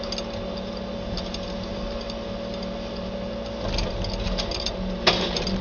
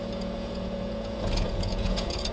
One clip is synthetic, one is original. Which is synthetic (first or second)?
second